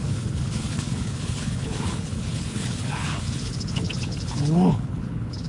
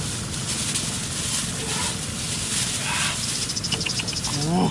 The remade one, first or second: first